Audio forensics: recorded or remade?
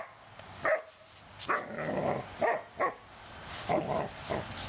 recorded